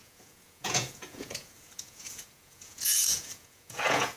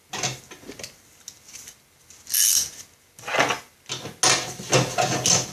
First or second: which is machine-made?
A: first